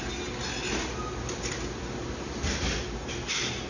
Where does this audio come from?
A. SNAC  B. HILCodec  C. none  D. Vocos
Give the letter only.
C